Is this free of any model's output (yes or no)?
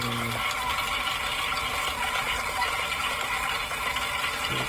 yes